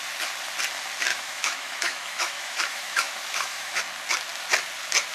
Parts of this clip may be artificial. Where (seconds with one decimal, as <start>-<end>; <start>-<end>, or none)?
1.1-3.8